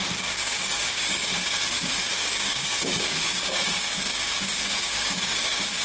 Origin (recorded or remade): remade